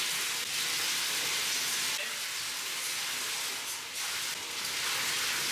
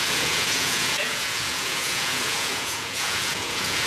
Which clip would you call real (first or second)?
first